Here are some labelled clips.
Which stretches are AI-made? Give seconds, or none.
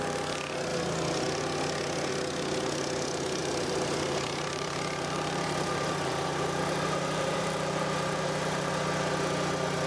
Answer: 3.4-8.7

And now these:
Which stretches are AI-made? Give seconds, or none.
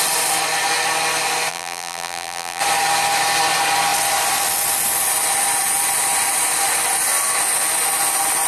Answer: 1.5-2.6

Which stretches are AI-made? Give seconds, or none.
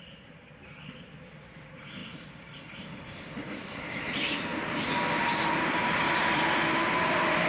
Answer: 0.0-4.5; 6.2-7.5